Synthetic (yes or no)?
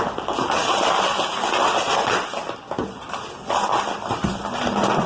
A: no